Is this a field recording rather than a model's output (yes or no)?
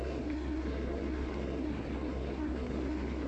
no